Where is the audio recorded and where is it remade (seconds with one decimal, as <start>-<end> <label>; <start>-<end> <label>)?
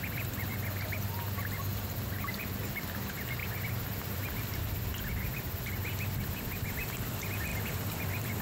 0.0-1.7 recorded; 1.7-2.6 remade; 2.6-3.4 recorded; 3.4-4.6 remade; 4.6-8.4 recorded